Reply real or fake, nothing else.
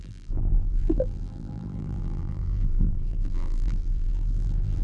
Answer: fake